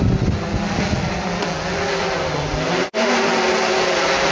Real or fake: real